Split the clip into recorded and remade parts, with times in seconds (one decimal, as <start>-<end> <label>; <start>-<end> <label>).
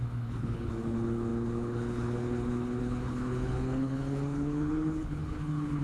0.0-5.8 remade